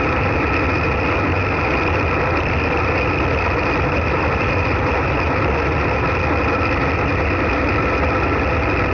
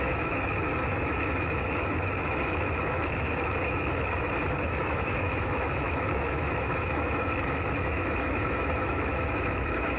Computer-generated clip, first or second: second